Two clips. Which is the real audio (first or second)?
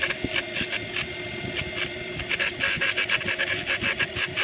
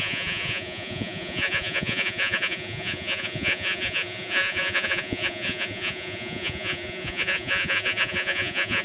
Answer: first